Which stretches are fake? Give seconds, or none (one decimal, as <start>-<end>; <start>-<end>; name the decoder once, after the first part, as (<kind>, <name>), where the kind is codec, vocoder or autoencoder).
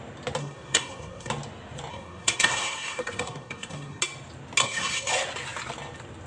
0.4-1.3 (codec, SNAC); 1.9-4.0; 4.6-5.1